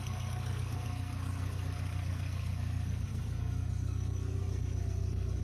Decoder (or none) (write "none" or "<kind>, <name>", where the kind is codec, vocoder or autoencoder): codec, SNAC